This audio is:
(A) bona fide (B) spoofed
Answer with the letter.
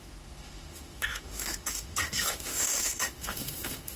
B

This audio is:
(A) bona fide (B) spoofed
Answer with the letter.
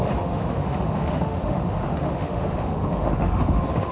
B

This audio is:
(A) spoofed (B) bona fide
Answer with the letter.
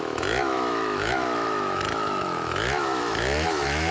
A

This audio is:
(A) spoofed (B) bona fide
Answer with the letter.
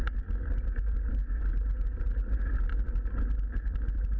B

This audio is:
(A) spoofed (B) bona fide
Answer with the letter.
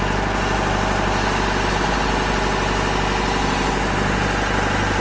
B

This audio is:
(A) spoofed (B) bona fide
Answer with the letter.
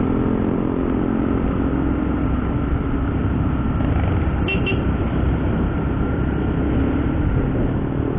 B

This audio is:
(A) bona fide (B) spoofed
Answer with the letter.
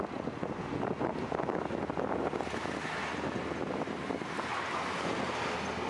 A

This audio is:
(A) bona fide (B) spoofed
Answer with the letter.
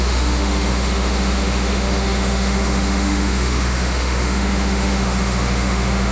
B